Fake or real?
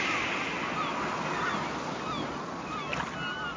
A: real